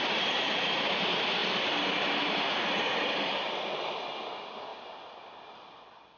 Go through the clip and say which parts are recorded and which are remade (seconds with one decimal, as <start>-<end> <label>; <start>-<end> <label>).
0.0-6.2 recorded